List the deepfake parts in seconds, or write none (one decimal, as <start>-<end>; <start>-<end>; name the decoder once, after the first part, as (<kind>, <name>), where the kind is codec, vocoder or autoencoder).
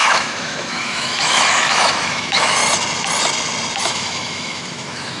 0.0-2.6 (autoencoder, DAC-VAE); 3.8-5.2